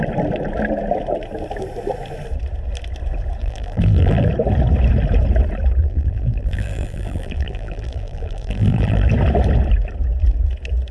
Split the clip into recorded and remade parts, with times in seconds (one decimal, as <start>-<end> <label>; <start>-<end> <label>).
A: 0.0-3.4 recorded; 3.4-4.3 remade; 4.3-5.8 recorded; 5.8-9.1 remade; 9.1-10.9 recorded